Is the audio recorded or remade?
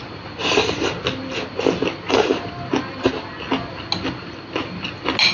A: recorded